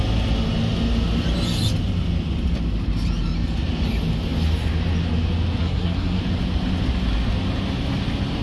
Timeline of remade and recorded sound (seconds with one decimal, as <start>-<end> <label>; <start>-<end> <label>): 0.0-5.6 recorded; 5.6-6.2 remade; 6.2-8.4 recorded